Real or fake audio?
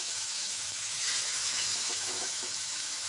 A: fake